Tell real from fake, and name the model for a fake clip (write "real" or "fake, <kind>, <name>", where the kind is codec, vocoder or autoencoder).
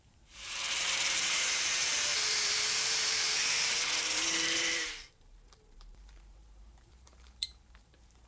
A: fake, vocoder, BigVGAN v2